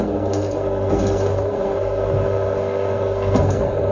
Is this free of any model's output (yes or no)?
no